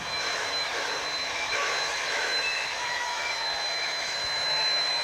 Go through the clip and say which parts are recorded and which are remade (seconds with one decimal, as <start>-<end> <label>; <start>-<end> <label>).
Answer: 0.0-5.0 remade